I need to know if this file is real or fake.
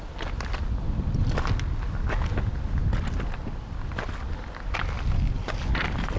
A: real